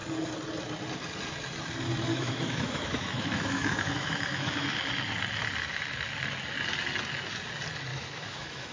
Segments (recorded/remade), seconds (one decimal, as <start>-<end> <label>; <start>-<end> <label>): 0.0-2.1 recorded; 2.1-4.8 remade; 4.8-7.9 recorded; 7.9-8.7 remade